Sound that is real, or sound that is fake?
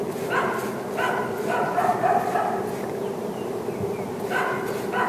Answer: real